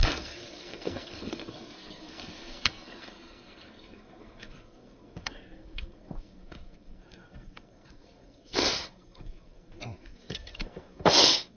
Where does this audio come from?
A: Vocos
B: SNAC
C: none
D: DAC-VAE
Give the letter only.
B